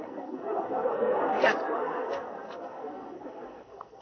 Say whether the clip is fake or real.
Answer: fake